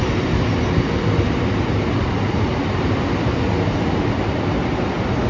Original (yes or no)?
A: yes